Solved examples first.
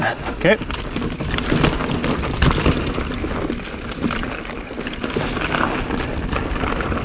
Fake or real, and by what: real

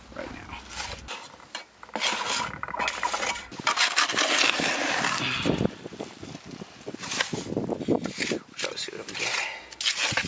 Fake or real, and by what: real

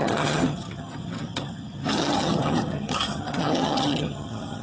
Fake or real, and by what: fake, vocoder, HiFi-GAN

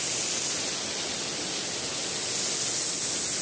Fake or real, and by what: real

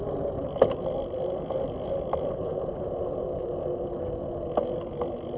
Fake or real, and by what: real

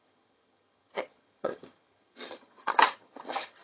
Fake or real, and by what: fake, vocoder, HiFi-GAN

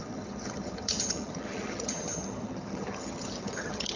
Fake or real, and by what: fake, vocoder, HiFi-GAN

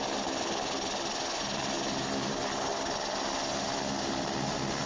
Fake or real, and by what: real